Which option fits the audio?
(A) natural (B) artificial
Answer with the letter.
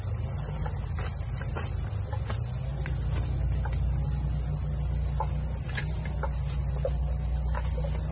A